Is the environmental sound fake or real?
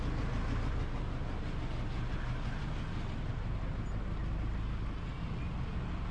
real